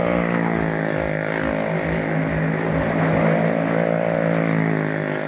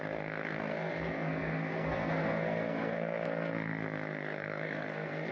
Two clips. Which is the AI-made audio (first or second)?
second